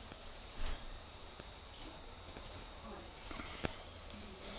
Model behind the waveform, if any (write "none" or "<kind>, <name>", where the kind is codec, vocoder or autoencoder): vocoder, BigVGAN v2